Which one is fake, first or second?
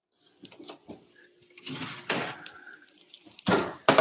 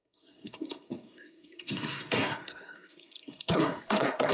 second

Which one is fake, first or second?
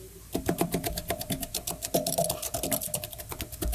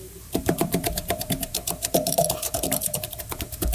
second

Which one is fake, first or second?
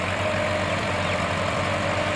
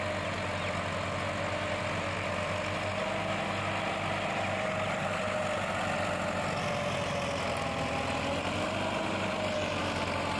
first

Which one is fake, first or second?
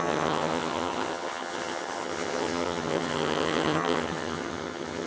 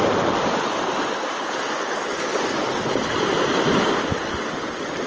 first